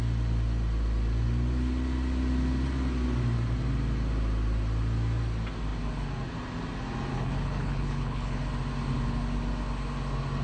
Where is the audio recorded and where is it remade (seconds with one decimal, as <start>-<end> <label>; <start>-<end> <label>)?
0.0-7.1 recorded; 7.1-8.4 remade; 8.4-10.4 recorded